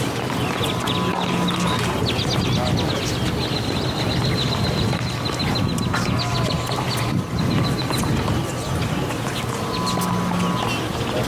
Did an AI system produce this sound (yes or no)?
no